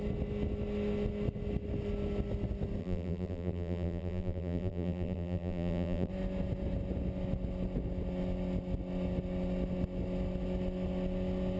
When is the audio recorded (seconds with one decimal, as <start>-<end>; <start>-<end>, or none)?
0.0-2.8; 6.1-11.6